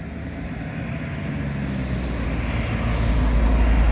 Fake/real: real